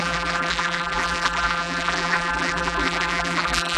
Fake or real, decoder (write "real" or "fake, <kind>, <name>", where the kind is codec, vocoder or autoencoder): fake, vocoder, BigVGAN v2